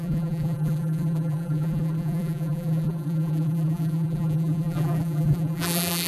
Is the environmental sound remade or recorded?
remade